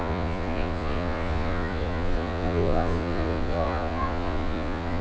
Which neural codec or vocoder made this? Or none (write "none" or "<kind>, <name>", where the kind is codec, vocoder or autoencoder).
vocoder, Vocos